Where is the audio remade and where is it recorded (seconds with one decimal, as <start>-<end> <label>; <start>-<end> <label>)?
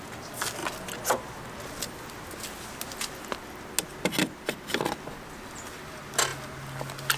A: 0.0-7.2 recorded